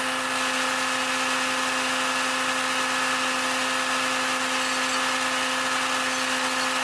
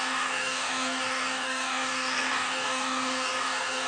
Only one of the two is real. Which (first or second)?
first